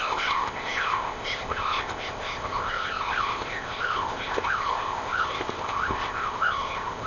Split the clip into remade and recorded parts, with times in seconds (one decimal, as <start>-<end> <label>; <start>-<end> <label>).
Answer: 0.0-7.1 remade